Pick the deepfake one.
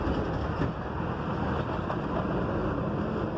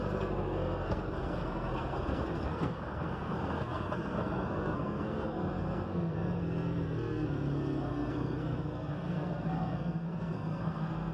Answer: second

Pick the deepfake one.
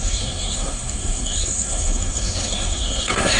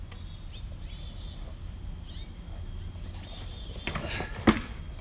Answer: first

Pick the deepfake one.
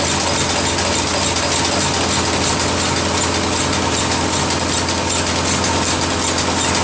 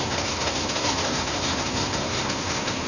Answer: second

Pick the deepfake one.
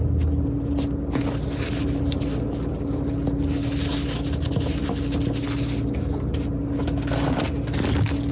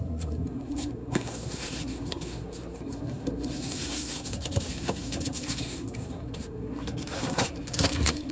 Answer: second